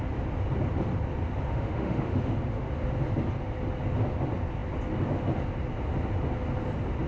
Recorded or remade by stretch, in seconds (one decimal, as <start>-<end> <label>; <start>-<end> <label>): 0.0-1.5 recorded; 1.5-2.7 remade; 2.7-7.1 recorded

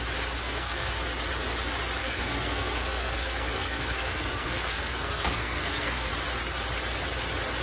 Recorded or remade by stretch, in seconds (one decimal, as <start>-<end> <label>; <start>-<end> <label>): 0.0-0.4 recorded; 0.4-0.9 remade; 0.9-2.0 recorded; 2.0-6.1 remade; 6.1-7.6 recorded

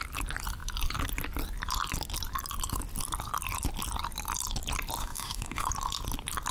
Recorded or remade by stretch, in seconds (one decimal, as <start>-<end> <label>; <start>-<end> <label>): 0.0-5.0 recorded; 5.0-5.7 remade; 5.7-6.5 recorded

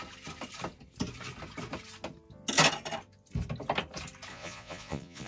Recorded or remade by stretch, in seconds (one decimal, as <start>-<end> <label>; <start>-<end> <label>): 0.0-4.3 recorded; 4.3-5.3 remade

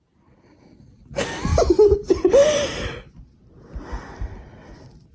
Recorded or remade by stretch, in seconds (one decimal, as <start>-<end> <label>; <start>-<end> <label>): 0.0-1.5 recorded; 1.5-3.1 remade; 3.1-5.1 recorded

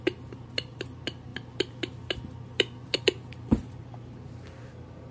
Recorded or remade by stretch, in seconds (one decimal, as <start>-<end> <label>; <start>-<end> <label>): 0.0-5.1 recorded